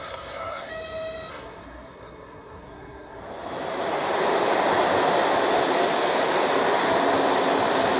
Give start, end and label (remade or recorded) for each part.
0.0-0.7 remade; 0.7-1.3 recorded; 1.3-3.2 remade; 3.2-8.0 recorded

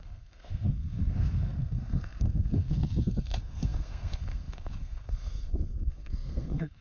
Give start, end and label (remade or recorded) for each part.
0.0-6.8 remade

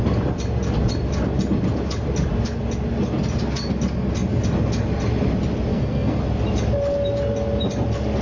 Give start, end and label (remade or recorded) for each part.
0.0-5.7 recorded; 5.7-6.2 remade; 6.2-8.2 recorded